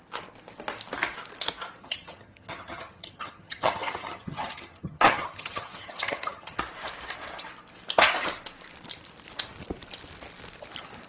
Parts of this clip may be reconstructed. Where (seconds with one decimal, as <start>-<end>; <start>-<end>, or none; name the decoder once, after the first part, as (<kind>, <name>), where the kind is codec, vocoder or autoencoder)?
1.8-6.6 (vocoder, HiFi-GAN)

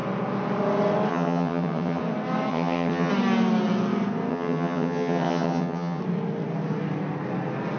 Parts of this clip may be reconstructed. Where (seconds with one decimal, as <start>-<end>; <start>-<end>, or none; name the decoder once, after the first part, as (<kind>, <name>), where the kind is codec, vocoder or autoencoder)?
1.1-2.0 (vocoder, HiFi-GAN); 2.5-3.1; 4.3-6.0

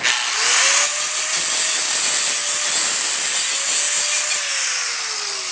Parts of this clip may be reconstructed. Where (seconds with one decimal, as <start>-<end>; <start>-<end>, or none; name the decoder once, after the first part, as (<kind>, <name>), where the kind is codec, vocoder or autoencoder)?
none

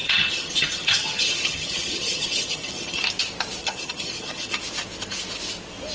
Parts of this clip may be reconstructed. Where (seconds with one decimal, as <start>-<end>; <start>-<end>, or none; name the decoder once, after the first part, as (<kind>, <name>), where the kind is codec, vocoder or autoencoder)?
0.0-3.1 (vocoder, HiFi-GAN); 3.6-4.6